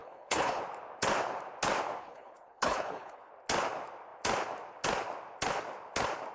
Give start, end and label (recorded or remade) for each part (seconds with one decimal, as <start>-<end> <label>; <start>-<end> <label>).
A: 0.0-0.6 remade; 0.6-2.0 recorded; 2.0-3.3 remade; 3.3-6.3 recorded